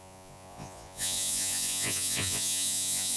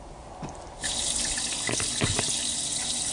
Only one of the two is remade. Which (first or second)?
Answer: first